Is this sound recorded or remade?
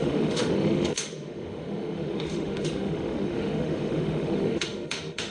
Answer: remade